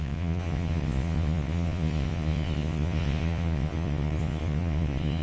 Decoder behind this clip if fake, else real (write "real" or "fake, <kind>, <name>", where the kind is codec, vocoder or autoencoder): fake, vocoder, Vocos